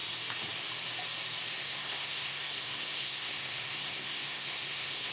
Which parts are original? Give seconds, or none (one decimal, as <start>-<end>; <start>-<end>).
0.0-1.6